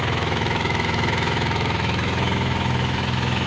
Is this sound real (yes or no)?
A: no